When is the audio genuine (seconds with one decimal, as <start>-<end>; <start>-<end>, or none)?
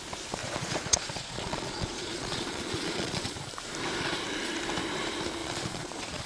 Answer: 0.0-0.4; 3.4-5.4